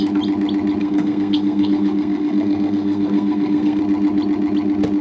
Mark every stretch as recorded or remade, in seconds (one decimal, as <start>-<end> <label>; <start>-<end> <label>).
0.0-0.8 recorded; 0.8-3.8 remade; 3.8-5.0 recorded